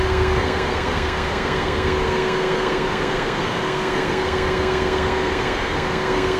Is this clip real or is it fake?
fake